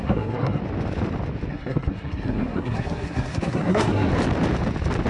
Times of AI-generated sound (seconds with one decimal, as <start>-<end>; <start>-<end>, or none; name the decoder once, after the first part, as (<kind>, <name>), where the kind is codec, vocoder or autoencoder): 0.0-0.6 (codec, SNAC); 1.5-4.1